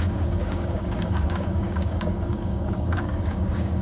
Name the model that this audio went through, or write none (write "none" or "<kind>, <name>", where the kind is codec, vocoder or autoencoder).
codec, DAC